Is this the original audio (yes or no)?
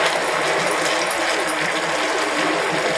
yes